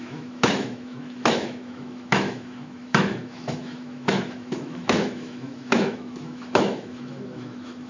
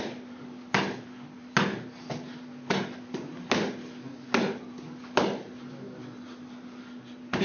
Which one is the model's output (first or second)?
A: first